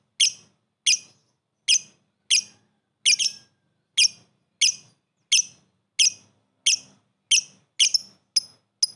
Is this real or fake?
real